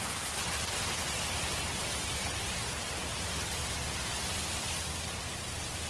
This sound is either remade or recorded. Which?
recorded